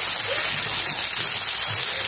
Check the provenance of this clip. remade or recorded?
recorded